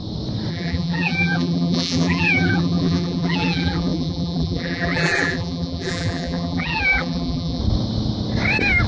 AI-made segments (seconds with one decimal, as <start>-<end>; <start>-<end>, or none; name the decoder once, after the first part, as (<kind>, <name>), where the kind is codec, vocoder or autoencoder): 0.5-7.6 (vocoder, BigVGAN v2)